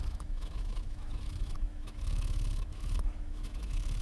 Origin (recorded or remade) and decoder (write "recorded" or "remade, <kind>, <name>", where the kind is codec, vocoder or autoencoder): remade, autoencoder, DAC-VAE